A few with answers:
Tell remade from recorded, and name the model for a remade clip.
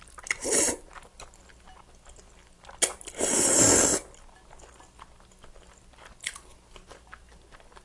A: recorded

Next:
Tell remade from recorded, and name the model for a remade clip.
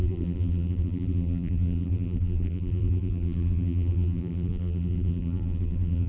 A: remade, vocoder, BigVGAN v2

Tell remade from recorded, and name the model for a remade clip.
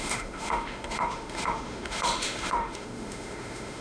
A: remade, autoencoder, DAC-VAE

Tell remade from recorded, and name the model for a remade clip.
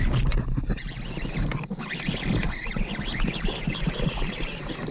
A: recorded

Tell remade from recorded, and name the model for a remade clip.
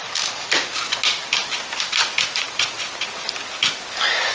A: recorded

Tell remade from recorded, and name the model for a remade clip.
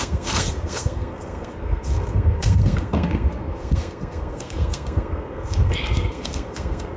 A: remade, codec, SNAC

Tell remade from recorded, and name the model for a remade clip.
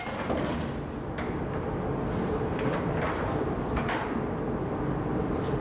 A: recorded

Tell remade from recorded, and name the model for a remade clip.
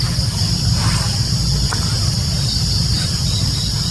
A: recorded